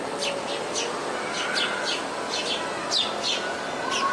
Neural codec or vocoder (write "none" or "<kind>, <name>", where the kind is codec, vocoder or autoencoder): none